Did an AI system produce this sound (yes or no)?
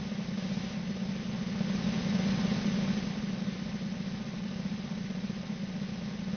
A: no